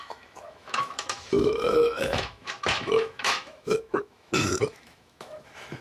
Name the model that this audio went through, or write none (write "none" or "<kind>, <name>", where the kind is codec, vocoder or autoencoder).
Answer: autoencoder, DAC-VAE